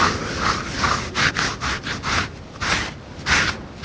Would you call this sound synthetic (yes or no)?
no